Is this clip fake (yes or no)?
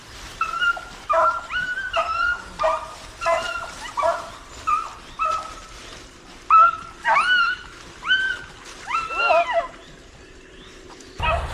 no